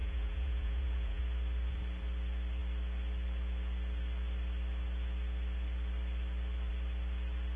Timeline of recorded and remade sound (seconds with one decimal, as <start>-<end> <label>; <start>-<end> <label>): 0.0-1.2 remade; 1.2-7.6 recorded